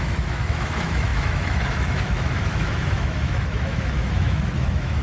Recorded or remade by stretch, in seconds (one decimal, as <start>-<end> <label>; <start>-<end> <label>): 0.0-5.0 remade